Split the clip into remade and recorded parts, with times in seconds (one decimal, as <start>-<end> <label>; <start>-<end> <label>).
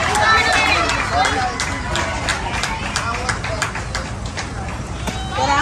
0.0-0.9 remade; 0.9-5.6 recorded